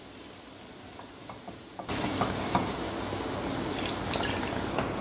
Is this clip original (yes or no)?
yes